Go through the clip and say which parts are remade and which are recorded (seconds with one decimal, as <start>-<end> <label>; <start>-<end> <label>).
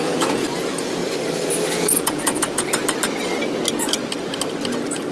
0.0-1.0 remade; 1.0-1.7 recorded; 1.7-2.8 remade; 2.8-5.1 recorded